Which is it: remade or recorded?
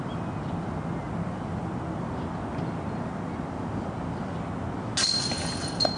recorded